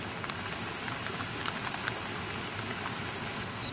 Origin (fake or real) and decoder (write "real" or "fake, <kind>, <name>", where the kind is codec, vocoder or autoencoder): real